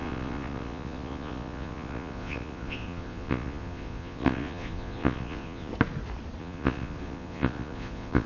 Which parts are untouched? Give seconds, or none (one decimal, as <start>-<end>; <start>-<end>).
5.7-6.4

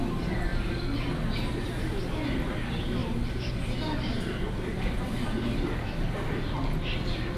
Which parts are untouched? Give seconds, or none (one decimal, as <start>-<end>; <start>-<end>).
0.0-7.4